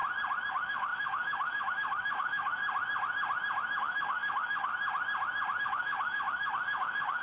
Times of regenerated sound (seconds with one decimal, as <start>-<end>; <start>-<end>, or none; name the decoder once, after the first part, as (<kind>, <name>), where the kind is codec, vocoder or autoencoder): 0.5-2.6 (autoencoder, DAC-VAE); 3.8-4.7; 5.6-7.2

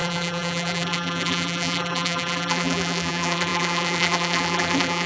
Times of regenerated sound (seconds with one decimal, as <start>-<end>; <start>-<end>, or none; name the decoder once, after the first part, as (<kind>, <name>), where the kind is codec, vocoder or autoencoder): 0.0-5.1 (vocoder, BigVGAN v2)

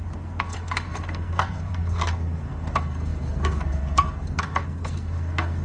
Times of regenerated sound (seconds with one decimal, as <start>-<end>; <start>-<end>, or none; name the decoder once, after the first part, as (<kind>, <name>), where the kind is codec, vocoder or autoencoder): 0.0-5.6 (codec, SNAC)

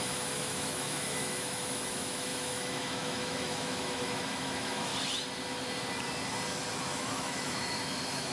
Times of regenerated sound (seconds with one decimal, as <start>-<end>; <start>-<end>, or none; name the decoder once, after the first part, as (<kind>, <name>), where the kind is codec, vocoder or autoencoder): 0.0-4.9 (autoencoder, DAC-VAE); 6.8-8.3